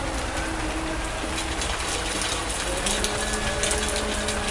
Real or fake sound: real